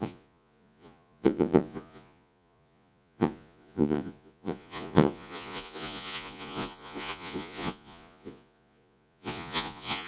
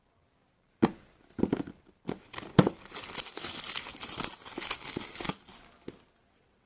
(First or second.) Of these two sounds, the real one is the second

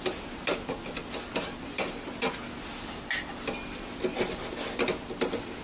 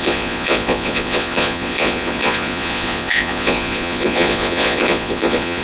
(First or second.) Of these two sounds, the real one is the first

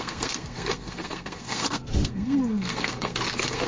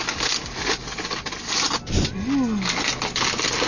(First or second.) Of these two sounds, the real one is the second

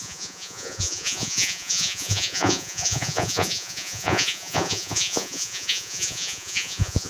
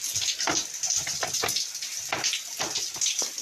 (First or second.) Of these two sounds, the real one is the second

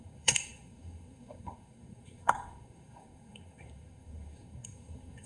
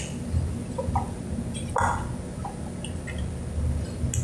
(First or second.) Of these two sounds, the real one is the second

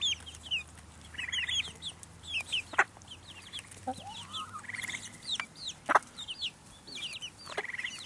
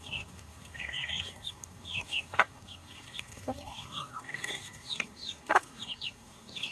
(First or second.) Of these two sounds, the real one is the first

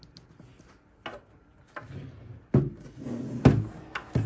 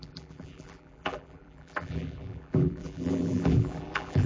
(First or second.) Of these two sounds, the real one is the first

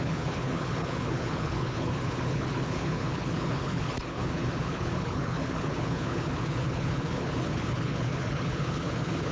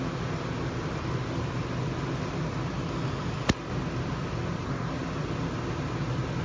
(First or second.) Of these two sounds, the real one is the second